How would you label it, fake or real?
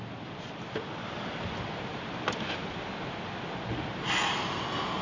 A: real